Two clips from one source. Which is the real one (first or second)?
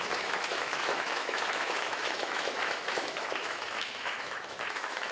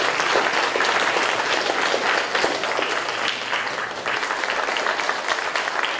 second